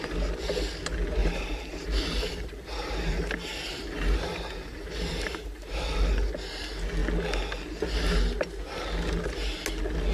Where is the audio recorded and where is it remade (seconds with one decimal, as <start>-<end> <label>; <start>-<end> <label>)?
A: 0.0-1.2 recorded; 1.2-6.3 remade; 6.3-10.1 recorded